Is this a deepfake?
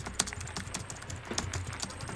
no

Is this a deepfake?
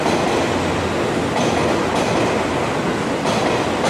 no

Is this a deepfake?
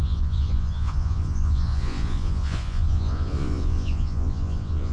yes